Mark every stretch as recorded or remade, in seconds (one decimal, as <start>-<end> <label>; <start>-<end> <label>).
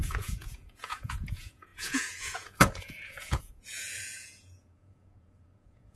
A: 0.0-6.0 remade